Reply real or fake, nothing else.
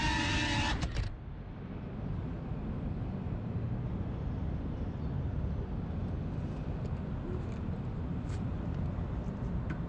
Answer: real